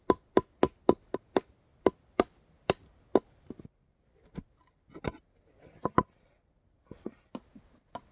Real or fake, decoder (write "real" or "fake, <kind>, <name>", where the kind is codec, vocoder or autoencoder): real